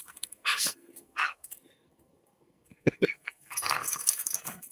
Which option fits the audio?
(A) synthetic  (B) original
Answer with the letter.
A